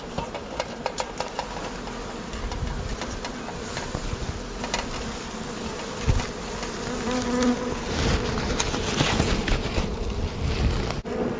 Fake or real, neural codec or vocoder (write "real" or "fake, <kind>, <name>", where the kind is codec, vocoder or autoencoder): real